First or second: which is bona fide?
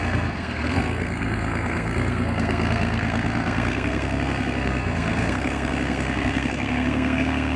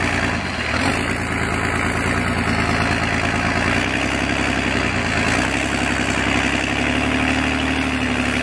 second